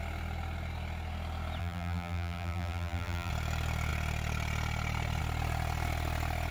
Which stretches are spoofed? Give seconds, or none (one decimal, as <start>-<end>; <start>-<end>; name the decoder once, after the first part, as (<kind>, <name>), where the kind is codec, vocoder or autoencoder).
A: 1.6-3.3 (vocoder, BigVGAN v2)